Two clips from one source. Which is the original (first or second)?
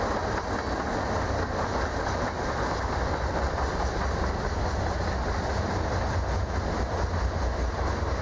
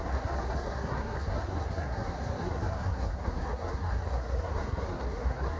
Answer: first